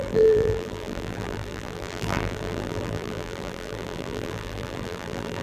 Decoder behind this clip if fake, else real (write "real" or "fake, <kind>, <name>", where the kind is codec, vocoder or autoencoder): fake, vocoder, BigVGAN v2